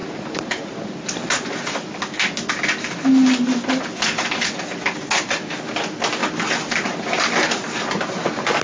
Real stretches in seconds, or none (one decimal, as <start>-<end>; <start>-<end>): 0.0-8.6